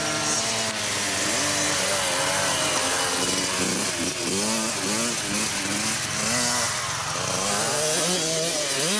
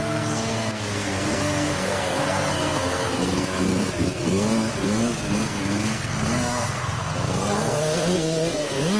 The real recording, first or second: first